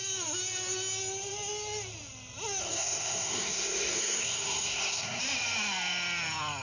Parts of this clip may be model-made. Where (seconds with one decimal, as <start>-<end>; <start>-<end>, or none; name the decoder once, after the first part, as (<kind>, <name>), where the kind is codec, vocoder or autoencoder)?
2.6-5.2 (codec, SNAC)